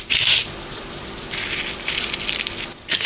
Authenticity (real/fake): real